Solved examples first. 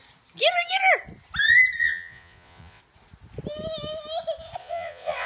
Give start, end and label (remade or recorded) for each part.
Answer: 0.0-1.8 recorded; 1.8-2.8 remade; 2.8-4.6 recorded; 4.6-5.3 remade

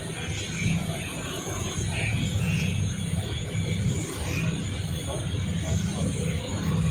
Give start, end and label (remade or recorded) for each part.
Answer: 0.0-0.8 recorded; 0.8-3.5 remade; 3.5-6.9 recorded

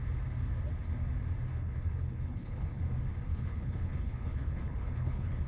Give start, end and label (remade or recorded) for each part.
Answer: 0.0-1.5 recorded; 1.5-2.8 remade; 2.8-3.3 recorded; 3.3-5.5 remade

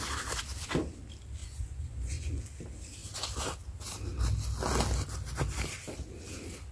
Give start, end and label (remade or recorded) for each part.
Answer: 0.0-1.4 recorded; 1.4-2.4 remade; 2.4-6.7 recorded

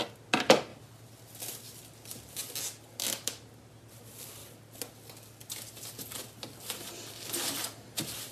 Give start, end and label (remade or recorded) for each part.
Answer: 0.0-8.3 recorded

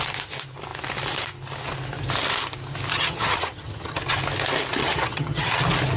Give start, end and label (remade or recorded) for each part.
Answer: 0.0-2.9 recorded; 2.9-4.0 remade; 4.0-4.8 recorded; 4.8-5.6 remade; 5.6-6.0 recorded

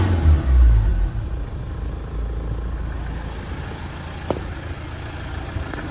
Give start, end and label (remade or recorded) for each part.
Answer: 0.0-5.9 recorded

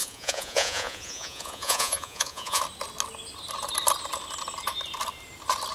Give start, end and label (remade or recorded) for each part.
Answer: 0.0-2.6 remade; 2.6-5.7 recorded